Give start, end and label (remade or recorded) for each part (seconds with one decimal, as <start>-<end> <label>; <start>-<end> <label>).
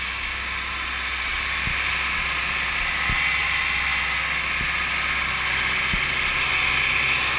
0.0-7.4 recorded